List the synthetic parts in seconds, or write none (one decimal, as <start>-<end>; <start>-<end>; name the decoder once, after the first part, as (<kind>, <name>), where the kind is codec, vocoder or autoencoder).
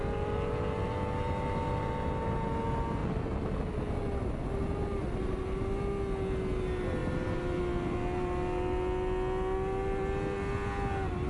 none